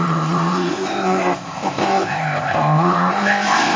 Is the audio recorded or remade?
remade